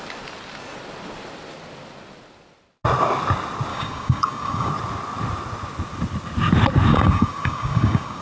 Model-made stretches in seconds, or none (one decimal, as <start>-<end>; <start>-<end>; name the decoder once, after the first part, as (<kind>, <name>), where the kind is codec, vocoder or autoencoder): 3.7-4.7 (codec, DAC); 6.9-8.2